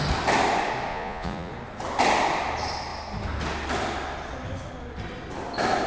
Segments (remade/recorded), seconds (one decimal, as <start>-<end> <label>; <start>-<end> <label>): 0.0-0.9 recorded; 0.9-1.5 remade; 1.5-5.9 recorded